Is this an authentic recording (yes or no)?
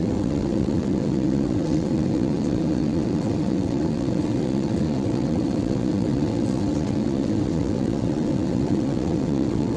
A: no